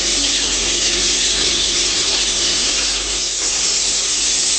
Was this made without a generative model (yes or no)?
no